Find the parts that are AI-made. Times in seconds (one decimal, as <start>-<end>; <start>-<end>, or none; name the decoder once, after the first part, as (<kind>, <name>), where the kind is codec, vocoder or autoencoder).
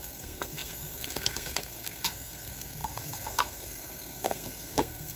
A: 0.0-5.2 (codec, SNAC)